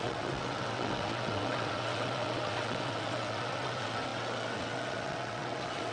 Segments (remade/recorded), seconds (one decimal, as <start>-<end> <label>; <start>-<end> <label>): 0.0-5.9 remade

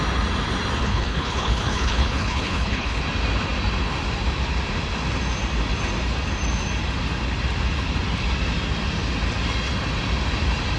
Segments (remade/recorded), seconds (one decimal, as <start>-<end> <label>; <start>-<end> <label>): 0.0-0.8 recorded; 0.8-3.0 remade; 3.0-10.8 recorded

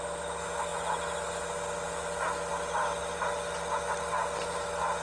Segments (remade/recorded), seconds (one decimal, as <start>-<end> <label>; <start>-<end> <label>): 0.0-5.0 recorded

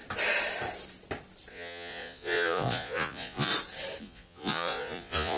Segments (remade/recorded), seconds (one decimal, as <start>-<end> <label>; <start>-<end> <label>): 0.0-1.5 recorded; 1.5-3.5 remade; 3.5-4.0 recorded; 4.0-5.4 remade

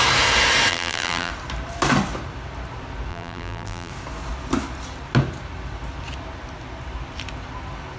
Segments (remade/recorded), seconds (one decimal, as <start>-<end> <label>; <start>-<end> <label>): 0.0-0.7 recorded; 0.7-1.3 remade; 1.3-3.1 recorded; 3.1-3.9 remade; 3.9-8.0 recorded

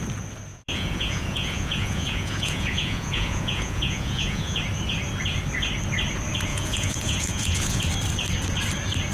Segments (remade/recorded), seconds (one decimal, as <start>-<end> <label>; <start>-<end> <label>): 0.0-0.5 recorded; 0.5-4.6 remade; 4.6-6.5 recorded; 6.5-7.8 remade; 7.8-9.1 recorded

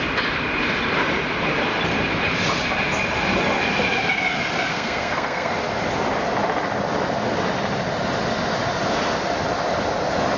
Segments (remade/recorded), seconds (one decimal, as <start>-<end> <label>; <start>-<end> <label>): 0.0-4.7 recorded; 4.7-5.5 remade; 5.5-10.4 recorded